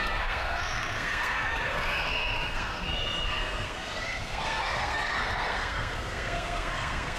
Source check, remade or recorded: remade